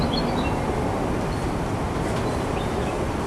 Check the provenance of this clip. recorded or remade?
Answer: recorded